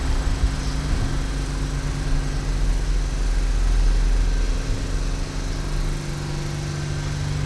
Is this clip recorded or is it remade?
recorded